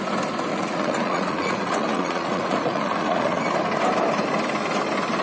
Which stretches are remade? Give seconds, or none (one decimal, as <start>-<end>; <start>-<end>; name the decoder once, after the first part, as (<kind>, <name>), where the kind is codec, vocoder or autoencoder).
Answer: 0.5-3.4 (vocoder, Vocos)